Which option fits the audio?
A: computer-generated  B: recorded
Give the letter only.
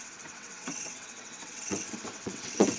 A